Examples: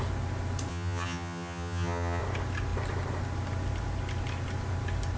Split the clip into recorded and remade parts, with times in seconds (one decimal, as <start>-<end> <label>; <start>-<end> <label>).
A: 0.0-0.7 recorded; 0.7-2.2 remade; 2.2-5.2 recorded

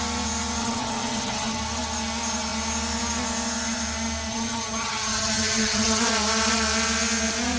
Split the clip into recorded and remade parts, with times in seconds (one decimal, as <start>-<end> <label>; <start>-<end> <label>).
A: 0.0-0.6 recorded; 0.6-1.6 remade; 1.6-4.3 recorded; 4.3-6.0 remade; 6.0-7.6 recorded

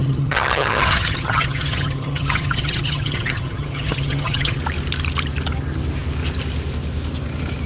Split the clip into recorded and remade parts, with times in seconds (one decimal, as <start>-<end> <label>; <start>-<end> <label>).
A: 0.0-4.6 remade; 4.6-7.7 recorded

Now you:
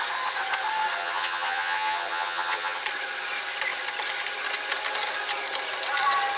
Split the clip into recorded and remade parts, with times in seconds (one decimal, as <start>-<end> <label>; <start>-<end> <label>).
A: 0.0-1.0 recorded; 1.0-2.8 remade; 2.8-6.4 recorded

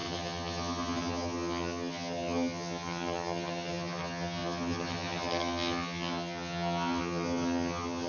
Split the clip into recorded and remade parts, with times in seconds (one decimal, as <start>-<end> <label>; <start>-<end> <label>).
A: 0.0-8.1 remade

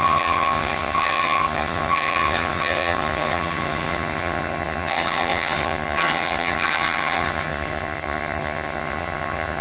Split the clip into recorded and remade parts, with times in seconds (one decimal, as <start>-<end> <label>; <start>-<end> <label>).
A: 0.0-9.6 remade